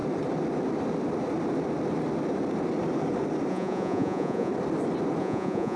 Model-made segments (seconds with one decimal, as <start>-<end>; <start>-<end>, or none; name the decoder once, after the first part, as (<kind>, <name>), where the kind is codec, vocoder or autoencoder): 3.5-4.5 (vocoder, Vocos); 5.2-5.8